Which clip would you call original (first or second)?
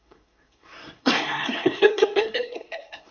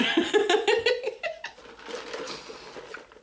second